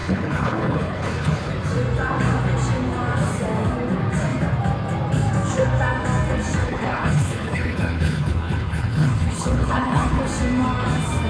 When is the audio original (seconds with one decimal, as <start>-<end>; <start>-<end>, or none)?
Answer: 1.5-6.6; 10.2-11.3